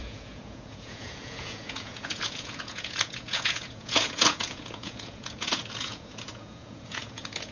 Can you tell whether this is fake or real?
fake